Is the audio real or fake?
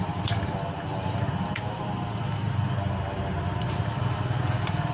fake